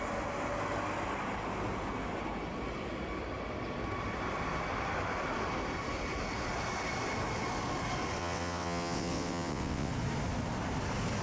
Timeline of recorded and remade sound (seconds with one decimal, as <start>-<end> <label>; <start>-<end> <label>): 0.0-8.2 recorded; 8.2-9.9 remade; 9.9-11.2 recorded